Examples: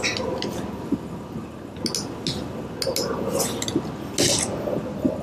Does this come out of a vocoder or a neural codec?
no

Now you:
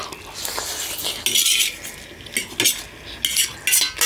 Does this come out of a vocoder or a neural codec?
no